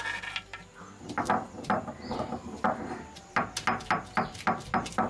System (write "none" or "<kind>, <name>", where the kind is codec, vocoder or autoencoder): none